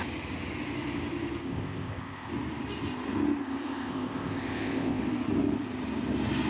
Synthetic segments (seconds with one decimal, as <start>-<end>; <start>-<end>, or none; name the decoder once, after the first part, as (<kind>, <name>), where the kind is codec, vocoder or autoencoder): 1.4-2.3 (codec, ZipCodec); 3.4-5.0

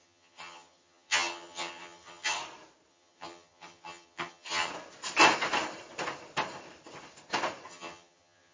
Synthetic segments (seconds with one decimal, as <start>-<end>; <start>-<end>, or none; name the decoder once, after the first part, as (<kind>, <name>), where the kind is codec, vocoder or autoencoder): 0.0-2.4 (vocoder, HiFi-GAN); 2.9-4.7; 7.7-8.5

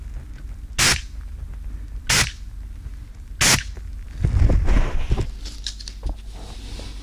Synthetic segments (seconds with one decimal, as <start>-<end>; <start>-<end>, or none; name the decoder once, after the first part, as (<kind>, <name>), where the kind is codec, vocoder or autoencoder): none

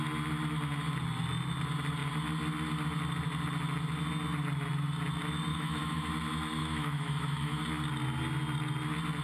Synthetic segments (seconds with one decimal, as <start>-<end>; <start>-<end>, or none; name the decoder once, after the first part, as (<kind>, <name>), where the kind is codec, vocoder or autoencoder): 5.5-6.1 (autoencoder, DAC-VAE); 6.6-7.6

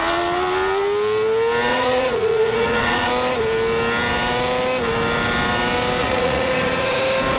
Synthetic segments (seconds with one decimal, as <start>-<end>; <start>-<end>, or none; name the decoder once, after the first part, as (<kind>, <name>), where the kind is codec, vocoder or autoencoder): 1.7-3.1 (vocoder, Vocos); 6.0-7.0

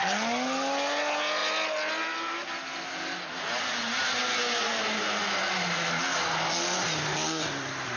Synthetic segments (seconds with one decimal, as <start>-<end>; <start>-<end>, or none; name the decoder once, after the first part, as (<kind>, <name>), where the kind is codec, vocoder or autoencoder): none

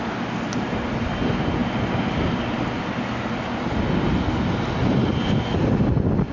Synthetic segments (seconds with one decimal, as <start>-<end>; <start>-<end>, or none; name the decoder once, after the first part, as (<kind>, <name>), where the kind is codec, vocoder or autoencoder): none

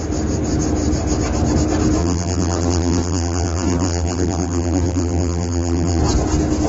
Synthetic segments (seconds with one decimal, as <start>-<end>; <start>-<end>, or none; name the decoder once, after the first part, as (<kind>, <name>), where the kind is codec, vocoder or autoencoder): 2.0-6.0 (vocoder, BigVGAN v2)